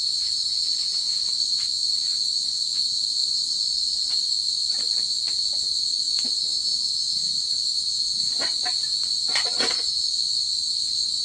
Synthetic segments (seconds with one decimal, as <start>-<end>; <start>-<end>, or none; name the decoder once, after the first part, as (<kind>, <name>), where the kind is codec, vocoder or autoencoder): 0.0-6.7 (vocoder, Vocos); 7.8-11.2